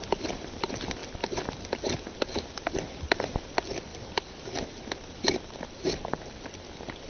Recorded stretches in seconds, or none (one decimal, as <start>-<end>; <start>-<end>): 0.0-7.1